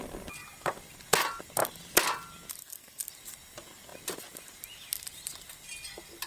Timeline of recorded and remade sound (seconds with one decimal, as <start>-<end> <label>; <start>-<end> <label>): 0.0-2.6 recorded; 2.6-3.1 remade; 3.1-6.3 recorded